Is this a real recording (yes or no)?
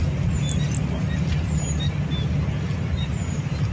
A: yes